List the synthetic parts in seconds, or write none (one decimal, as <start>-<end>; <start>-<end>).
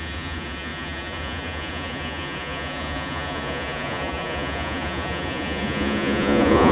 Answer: 0.0-6.7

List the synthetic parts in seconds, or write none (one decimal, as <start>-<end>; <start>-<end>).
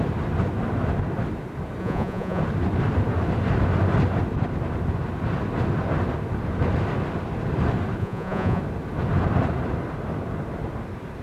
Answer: 1.8-2.4; 8.0-8.6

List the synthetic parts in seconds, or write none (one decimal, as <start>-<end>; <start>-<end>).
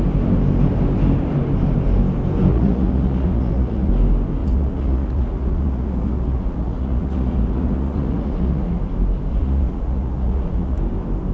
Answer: 2.5-3.9; 4.4-8.8; 9.3-10.8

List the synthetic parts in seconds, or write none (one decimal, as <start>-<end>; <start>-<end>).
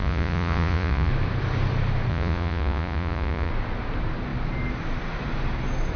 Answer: 0.0-1.1; 2.1-3.5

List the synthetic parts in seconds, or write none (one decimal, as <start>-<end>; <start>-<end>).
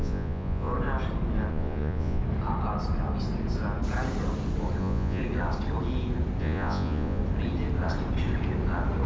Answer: 0.0-0.7; 1.5-2.2; 4.8-5.2; 6.4-7.2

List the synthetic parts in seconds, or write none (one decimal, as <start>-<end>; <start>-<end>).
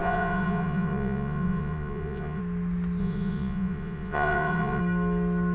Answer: 0.0-2.4; 3.0-4.8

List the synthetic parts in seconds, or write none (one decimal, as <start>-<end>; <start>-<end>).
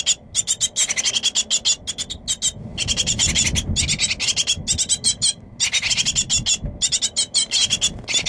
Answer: none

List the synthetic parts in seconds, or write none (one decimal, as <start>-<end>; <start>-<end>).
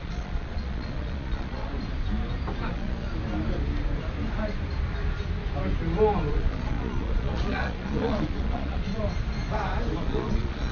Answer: 0.0-1.7; 2.7-3.1; 6.3-9.0; 10.0-10.7